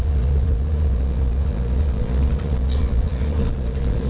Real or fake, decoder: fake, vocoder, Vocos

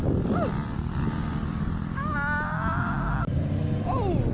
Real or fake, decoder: real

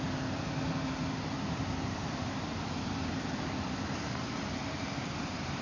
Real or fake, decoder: fake, vocoder, BigVGAN v2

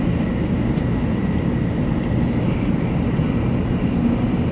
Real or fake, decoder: real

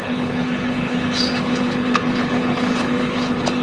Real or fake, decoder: fake, codec, HILCodec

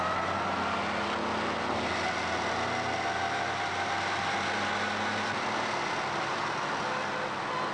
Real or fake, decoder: real